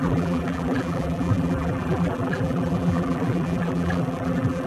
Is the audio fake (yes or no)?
yes